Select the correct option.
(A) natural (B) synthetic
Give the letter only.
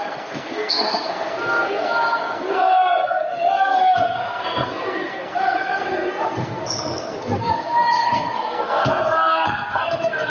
B